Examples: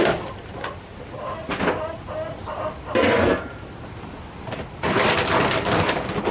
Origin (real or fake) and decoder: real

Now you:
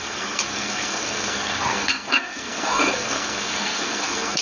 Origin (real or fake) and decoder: fake, codec, SNAC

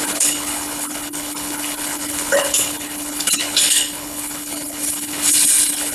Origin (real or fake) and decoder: fake, codec, HILCodec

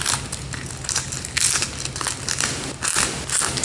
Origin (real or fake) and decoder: real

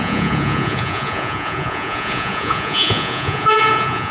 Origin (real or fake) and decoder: fake, vocoder, Vocos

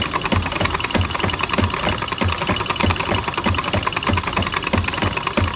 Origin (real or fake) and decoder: real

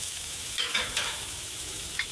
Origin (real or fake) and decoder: fake, autoencoder, DAC-VAE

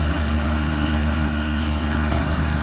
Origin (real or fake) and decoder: fake, codec, SNAC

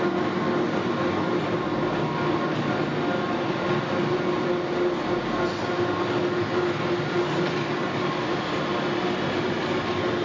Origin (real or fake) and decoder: real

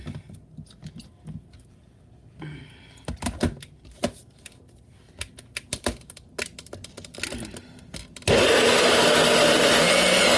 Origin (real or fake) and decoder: real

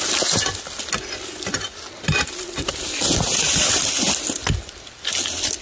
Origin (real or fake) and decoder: real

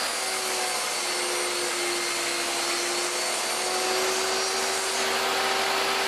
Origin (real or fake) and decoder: real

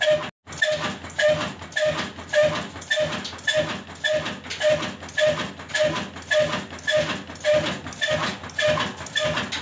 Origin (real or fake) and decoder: real